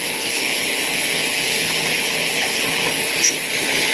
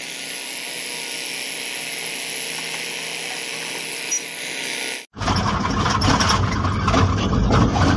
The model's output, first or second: first